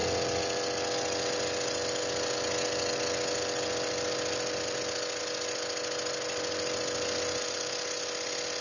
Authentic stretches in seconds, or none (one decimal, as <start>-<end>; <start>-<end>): 0.0-8.6